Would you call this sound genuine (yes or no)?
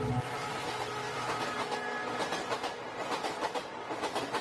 yes